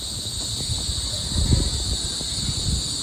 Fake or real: real